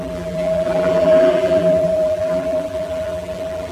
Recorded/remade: remade